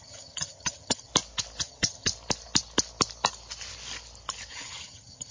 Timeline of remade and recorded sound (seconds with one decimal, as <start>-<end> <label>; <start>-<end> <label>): 0.0-1.1 remade; 1.1-1.6 recorded; 1.6-2.1 remade; 2.1-4.5 recorded; 4.5-5.3 remade